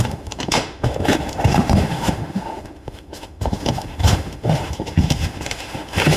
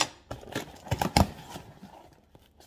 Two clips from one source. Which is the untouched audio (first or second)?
second